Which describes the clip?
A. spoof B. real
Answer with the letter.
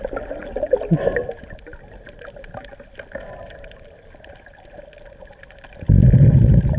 B